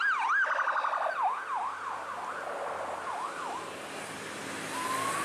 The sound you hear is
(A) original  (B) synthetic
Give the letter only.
A